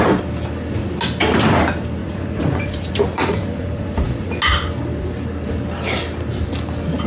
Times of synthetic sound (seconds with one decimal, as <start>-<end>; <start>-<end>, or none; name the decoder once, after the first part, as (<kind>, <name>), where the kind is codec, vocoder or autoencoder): 2.0-4.4 (vocoder, Vocos)